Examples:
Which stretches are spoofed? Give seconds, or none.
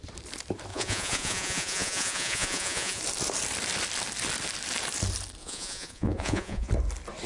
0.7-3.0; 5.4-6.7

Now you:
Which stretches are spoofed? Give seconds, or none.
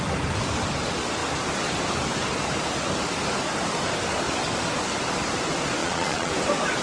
5.8-6.3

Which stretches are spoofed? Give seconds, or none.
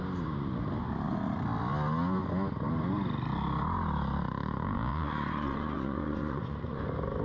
4.9-6.8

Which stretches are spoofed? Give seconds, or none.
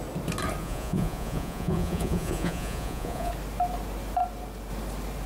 0.6-3.3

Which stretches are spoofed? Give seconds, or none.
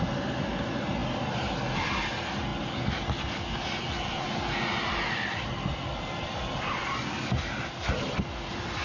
none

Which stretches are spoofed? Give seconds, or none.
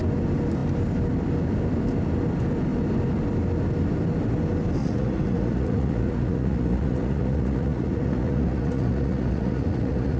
4.8-10.2